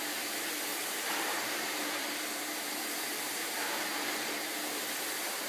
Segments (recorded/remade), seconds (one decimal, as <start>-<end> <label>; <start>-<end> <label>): 0.0-0.7 recorded; 0.7-2.7 remade; 2.7-3.4 recorded; 3.4-5.5 remade